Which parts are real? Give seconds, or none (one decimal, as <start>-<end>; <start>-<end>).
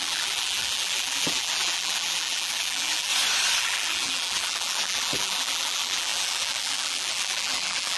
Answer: 3.1-3.6